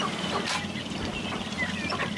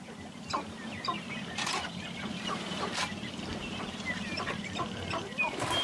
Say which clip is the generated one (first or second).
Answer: second